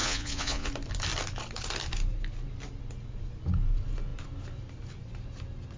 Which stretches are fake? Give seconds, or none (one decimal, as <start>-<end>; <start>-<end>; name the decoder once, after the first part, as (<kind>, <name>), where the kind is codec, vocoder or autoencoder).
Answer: 0.0-0.7 (vocoder, Vocos)